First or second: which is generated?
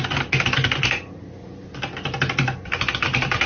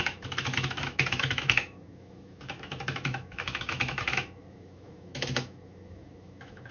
second